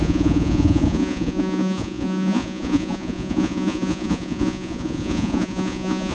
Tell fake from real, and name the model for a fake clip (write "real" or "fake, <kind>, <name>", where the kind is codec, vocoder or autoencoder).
fake, vocoder, Vocos